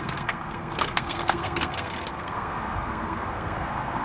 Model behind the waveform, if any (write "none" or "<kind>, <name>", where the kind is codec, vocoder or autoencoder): codec, SNAC